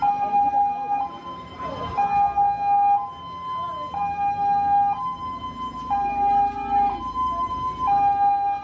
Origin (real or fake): real